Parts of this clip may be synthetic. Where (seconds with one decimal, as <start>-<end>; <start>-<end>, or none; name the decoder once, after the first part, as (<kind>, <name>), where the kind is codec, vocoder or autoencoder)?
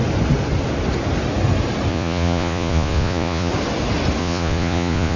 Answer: 1.9-3.5 (vocoder, Vocos); 4.2-5.2